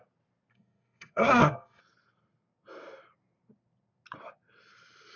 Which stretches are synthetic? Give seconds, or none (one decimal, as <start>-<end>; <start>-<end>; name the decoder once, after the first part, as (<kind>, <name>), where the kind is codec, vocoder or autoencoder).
0.5-1.8 (codec, SNAC)